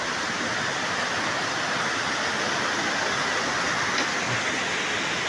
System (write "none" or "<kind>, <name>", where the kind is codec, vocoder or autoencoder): none